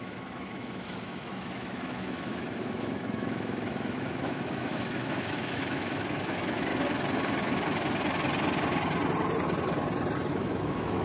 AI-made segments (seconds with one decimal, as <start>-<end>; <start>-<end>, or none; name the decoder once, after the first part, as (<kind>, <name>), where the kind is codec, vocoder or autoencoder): 0.0-6.7 (autoencoder, DAC-VAE); 10.3-11.0